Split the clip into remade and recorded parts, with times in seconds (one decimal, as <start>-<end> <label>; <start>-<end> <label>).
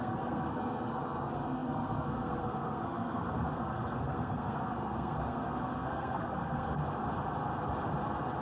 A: 0.0-6.8 remade; 6.8-8.4 recorded